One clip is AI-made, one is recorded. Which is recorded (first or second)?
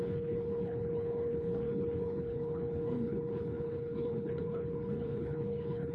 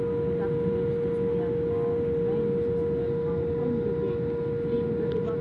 second